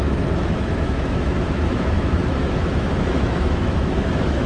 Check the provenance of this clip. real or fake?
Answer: fake